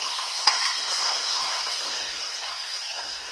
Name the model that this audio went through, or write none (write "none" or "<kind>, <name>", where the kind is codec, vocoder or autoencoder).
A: codec, SNAC